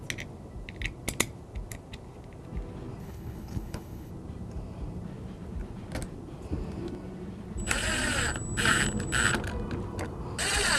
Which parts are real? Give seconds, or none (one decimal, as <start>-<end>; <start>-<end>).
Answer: 0.0-3.0; 4.1-10.8